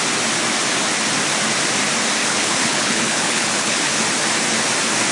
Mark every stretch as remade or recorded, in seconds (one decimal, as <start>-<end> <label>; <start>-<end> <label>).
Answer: 0.0-2.2 recorded; 2.2-4.0 remade; 4.0-5.1 recorded